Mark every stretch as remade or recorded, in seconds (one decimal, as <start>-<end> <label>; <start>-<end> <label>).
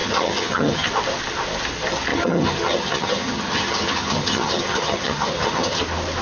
0.0-0.9 remade; 0.9-2.1 recorded; 2.1-5.8 remade; 5.8-6.2 recorded